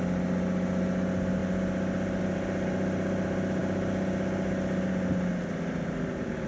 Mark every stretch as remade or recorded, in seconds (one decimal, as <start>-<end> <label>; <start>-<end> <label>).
0.0-6.5 recorded